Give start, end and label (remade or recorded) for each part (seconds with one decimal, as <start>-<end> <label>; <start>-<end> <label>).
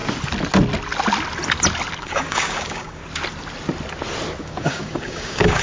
0.0-2.0 recorded; 2.0-3.0 remade; 3.0-4.4 recorded; 4.4-5.6 remade